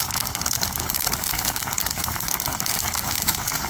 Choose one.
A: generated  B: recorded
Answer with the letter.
A